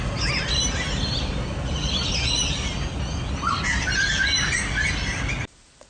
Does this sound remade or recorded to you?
recorded